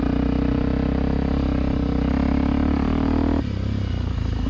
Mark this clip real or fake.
real